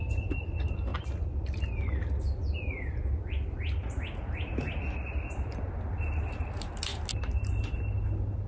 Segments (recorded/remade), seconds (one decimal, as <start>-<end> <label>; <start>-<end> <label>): 0.0-8.5 recorded